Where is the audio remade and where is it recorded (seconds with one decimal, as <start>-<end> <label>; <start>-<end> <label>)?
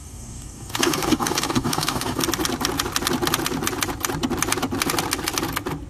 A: 0.0-2.2 remade; 2.2-5.9 recorded